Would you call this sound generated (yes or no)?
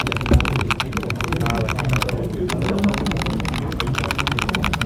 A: no